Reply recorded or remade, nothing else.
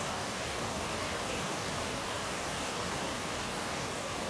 remade